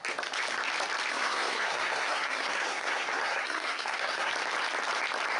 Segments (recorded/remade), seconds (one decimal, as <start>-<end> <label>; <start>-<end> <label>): 0.0-1.1 recorded; 1.1-4.3 remade; 4.3-5.4 recorded